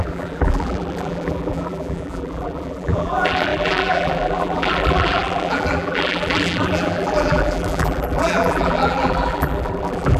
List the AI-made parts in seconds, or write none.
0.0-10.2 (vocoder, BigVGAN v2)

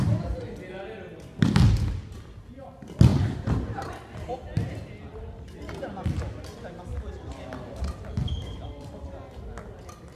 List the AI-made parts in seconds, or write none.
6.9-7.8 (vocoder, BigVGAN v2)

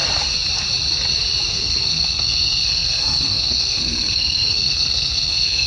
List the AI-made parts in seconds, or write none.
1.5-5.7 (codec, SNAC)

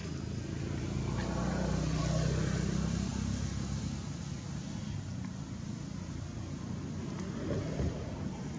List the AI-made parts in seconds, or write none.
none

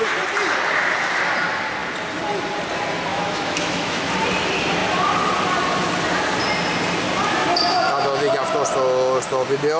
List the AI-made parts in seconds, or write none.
3.1-4.1 (autoencoder, DAC-VAE)

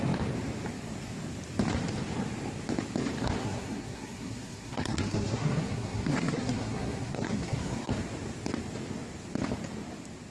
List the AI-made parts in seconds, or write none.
3.4-7.9 (codec, SNAC)

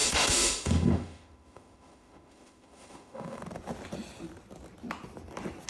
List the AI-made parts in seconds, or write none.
0.0-3.4 (autoencoder, DAC-VAE)

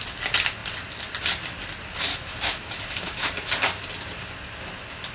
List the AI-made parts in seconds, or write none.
2.1-3.3 (autoencoder, DAC-VAE)